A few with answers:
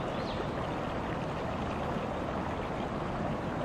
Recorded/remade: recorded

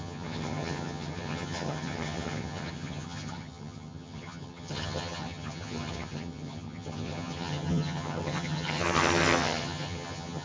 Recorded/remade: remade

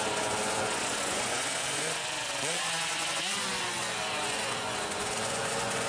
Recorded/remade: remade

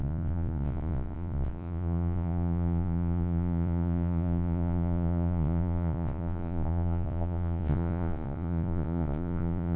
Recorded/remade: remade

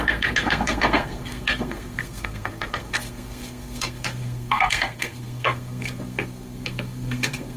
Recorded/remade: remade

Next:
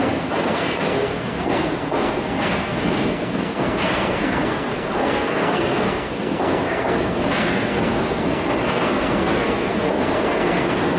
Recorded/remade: remade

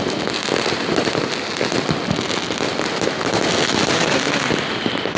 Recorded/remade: recorded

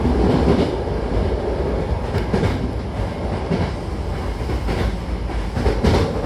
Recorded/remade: recorded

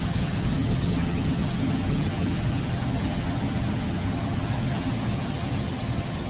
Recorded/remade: remade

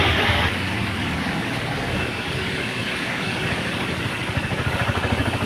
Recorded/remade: remade